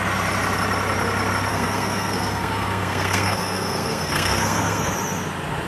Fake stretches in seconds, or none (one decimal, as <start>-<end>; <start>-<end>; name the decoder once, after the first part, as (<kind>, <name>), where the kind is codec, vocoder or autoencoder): 1.5-4.9 (codec, SNAC)